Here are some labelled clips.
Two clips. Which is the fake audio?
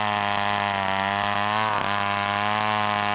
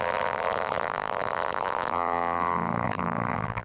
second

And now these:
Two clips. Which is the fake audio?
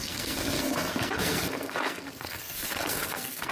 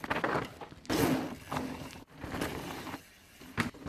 first